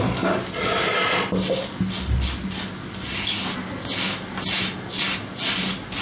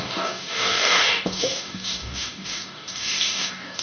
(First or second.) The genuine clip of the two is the first